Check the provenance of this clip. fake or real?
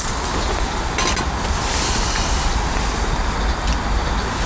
real